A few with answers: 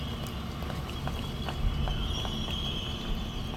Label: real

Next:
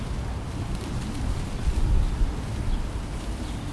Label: real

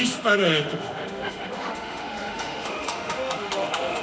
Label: fake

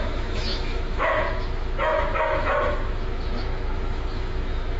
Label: fake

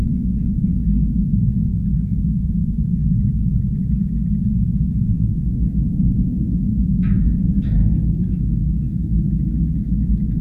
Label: fake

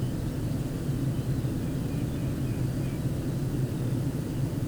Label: real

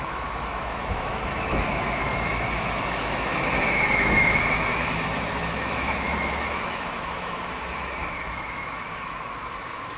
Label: fake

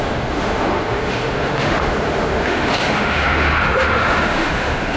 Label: fake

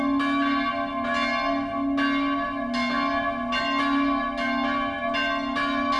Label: real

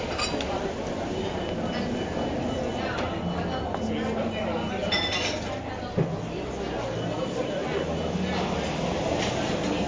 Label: real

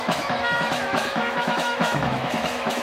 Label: fake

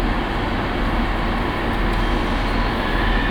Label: real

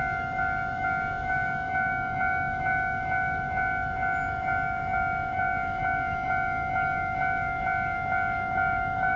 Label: fake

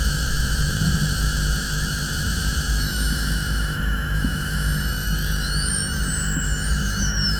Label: fake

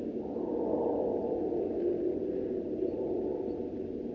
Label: real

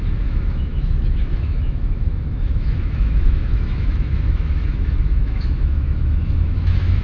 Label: fake